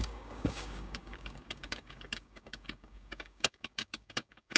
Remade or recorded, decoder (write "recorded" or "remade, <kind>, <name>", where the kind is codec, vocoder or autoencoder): remade, codec, DAC